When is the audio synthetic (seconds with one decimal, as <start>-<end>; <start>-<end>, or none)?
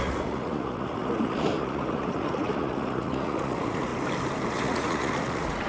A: 0.0-3.9; 4.5-5.7